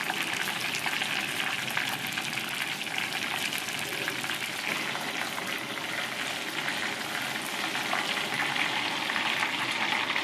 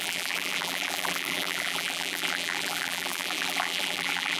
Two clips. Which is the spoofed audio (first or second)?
second